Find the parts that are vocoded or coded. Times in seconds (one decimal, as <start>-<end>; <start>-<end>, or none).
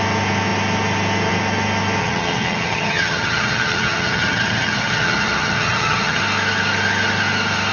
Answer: 2.0-6.2